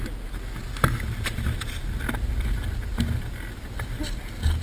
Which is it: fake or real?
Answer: real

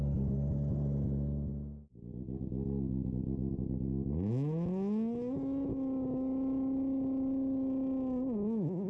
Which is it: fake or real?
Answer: real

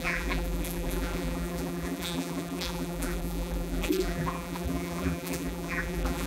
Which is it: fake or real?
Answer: fake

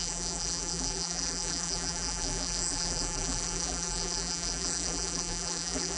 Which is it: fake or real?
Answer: fake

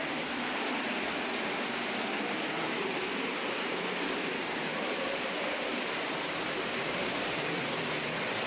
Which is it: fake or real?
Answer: fake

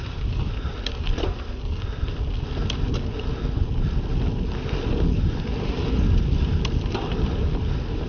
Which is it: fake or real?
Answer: real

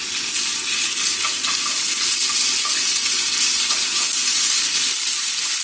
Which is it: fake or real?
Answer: real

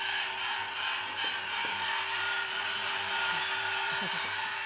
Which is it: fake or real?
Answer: fake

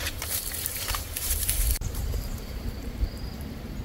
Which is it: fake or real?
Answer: fake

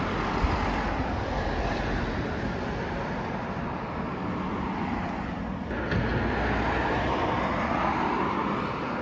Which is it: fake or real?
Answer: real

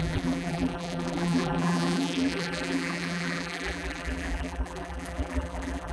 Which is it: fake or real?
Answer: fake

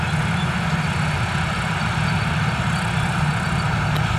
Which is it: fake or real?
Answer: real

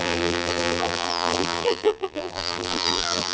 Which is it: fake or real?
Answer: fake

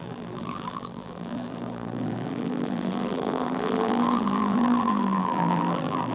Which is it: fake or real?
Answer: fake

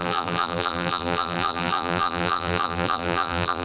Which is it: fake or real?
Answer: fake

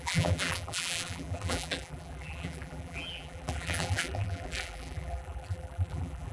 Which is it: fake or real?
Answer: fake